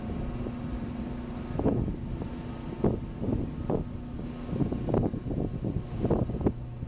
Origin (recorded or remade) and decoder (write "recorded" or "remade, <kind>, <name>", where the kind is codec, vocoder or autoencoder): recorded